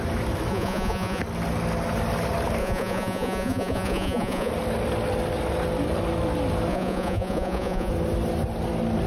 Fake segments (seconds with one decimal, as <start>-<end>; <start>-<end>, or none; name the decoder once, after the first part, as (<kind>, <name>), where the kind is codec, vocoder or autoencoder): 0.5-1.2 (vocoder, Vocos); 2.6-4.5; 6.7-7.9